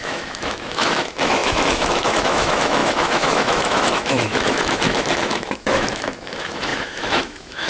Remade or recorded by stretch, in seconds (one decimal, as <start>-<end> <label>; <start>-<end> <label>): 0.0-7.7 remade